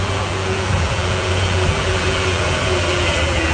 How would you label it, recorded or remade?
remade